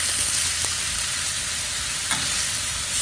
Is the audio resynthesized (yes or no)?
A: no